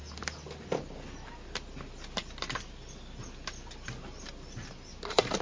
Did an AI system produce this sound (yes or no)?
no